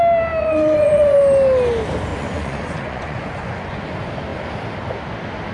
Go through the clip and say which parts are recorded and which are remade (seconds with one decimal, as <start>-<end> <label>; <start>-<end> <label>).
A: 0.0-0.4 recorded; 0.4-1.2 remade; 1.2-2.1 recorded; 2.1-3.8 remade; 3.8-5.5 recorded